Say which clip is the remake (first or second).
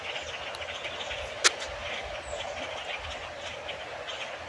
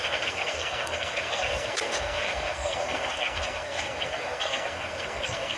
second